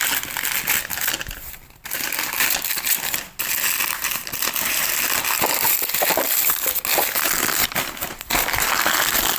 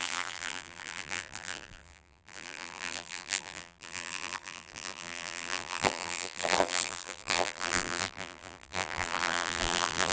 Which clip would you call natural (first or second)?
first